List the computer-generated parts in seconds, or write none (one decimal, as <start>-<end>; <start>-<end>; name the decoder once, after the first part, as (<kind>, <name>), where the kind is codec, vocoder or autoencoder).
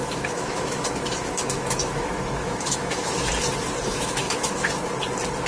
0.0-3.3 (autoencoder, DAC-VAE); 3.9-4.9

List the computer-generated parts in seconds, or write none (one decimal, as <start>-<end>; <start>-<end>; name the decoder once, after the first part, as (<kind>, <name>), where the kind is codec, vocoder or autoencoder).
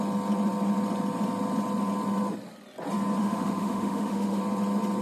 3.2-4.4 (autoencoder, DAC-VAE)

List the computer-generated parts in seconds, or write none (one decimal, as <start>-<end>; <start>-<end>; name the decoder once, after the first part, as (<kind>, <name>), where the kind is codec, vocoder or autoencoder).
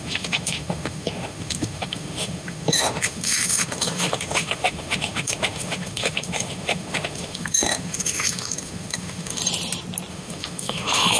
0.0-9.4 (autoencoder, DAC-VAE); 10.1-11.2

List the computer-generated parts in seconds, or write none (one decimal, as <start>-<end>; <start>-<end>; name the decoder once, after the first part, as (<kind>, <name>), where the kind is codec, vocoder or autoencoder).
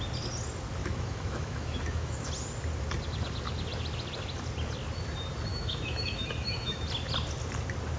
0.8-2.3 (autoencoder, DAC-VAE); 5.5-6.8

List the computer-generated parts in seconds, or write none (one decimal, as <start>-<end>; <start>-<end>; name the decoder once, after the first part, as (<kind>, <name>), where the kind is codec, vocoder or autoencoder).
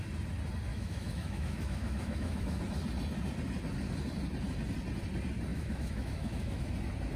0.7-2.6 (autoencoder, DAC-VAE); 5.5-6.7